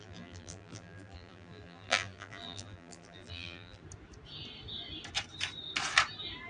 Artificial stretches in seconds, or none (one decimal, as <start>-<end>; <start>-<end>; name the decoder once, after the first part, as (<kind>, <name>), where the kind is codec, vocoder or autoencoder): 0.0-3.8 (vocoder, BigVGAN v2)